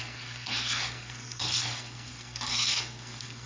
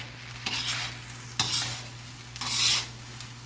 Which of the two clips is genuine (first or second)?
second